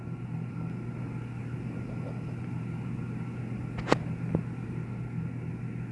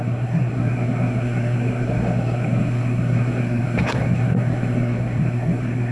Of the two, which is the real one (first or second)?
first